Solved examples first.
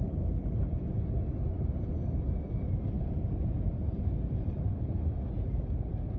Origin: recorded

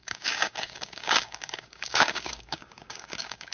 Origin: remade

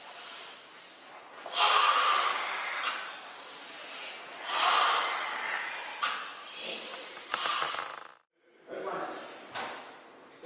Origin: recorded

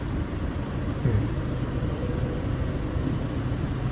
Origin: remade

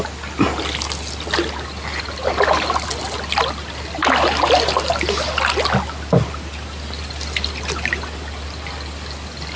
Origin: recorded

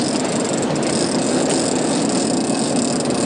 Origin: recorded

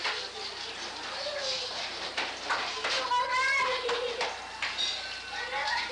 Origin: recorded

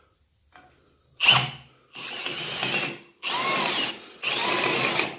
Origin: recorded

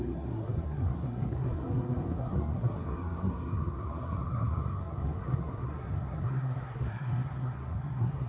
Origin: remade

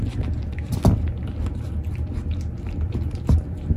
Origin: recorded